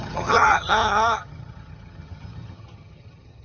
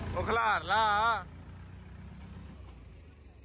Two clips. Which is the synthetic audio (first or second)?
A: first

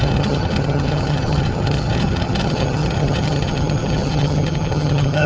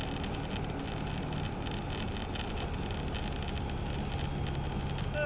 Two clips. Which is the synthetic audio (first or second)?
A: first